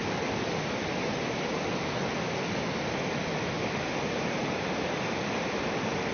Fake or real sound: real